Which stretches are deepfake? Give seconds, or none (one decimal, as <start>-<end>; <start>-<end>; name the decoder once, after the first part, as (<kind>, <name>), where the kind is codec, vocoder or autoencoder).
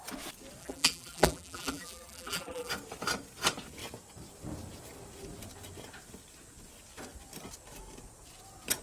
0.6-2.7 (vocoder, BigVGAN v2)